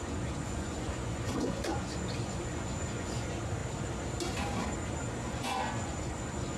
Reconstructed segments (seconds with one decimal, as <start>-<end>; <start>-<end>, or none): 0.0-3.6; 5.1-6.6